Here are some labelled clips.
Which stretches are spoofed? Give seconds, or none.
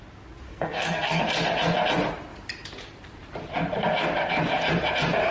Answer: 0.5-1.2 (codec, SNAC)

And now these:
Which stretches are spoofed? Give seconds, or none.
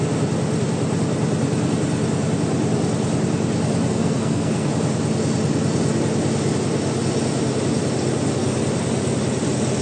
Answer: 3.9-4.7 (codec, SNAC)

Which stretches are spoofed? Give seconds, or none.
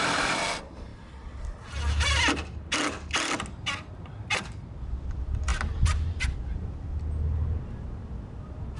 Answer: none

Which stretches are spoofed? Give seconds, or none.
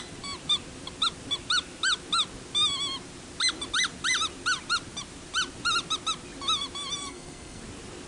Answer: 7.0-7.6 (codec, SNAC)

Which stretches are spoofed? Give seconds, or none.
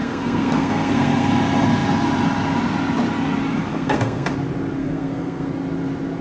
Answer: 0.0-1.3 (codec, SNAC); 3.7-4.3; 4.8-5.5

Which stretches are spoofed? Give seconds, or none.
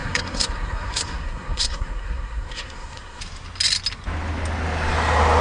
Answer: 0.0-3.2 (codec, SNAC)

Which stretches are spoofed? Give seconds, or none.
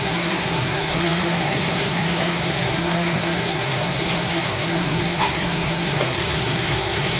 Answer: 0.0-7.2 (codec, SNAC)